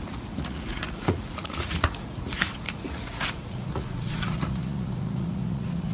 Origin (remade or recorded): remade